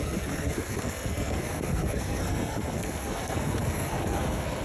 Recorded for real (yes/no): no